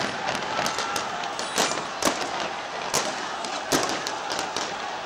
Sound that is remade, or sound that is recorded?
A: recorded